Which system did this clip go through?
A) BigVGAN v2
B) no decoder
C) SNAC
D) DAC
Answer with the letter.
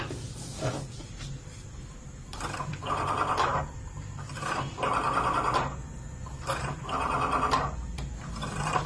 A